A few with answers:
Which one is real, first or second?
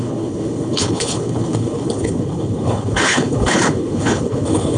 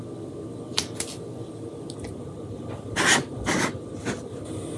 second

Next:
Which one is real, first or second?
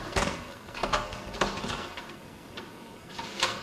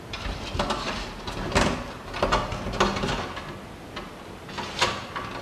second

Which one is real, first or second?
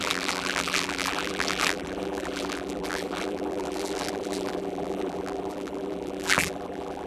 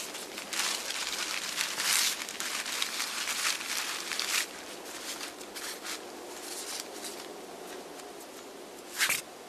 second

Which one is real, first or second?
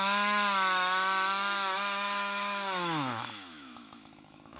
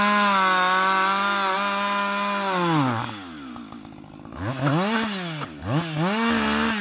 second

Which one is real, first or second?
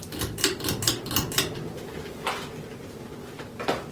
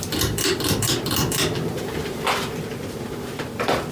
first